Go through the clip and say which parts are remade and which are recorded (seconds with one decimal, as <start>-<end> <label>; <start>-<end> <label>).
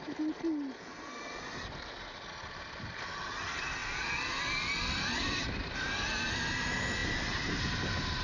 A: 0.0-8.2 recorded